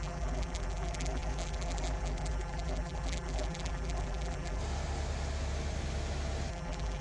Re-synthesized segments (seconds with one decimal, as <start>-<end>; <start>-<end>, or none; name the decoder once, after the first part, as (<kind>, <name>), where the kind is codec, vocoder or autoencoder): 0.0-4.6 (vocoder, BigVGAN v2); 6.5-7.0